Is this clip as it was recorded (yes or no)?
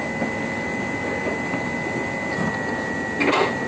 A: yes